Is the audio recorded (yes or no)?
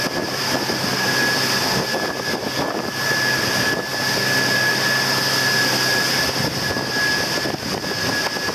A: yes